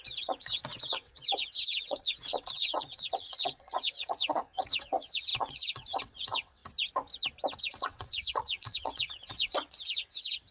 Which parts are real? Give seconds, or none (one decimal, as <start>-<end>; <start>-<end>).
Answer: 6.6-7.6